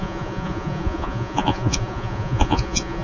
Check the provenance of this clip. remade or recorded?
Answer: remade